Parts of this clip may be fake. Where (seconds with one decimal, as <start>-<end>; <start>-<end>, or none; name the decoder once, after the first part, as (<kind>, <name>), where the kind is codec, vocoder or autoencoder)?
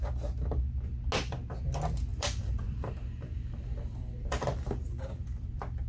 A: 2.1-5.9 (vocoder, BigVGAN v2)